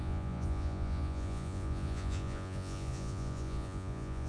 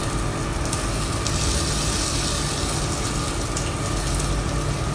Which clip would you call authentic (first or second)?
second